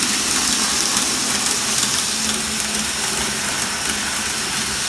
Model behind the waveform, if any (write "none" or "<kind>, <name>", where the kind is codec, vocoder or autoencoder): none